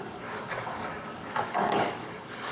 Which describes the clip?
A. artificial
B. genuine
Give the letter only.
A